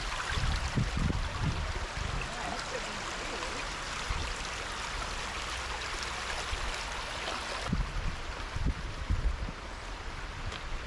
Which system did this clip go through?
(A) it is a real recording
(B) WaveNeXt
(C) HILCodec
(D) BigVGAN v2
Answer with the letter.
A